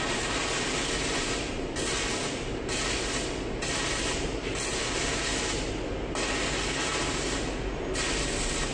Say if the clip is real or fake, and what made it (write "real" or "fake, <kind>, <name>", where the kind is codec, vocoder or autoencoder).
real